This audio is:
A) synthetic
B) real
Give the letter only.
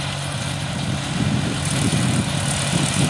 B